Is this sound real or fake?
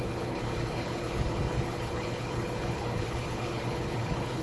fake